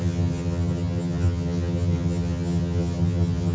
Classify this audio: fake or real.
fake